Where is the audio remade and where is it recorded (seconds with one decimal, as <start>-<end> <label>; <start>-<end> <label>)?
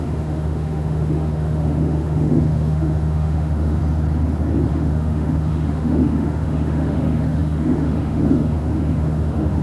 0.0-3.8 remade; 3.8-4.7 recorded; 4.7-9.6 remade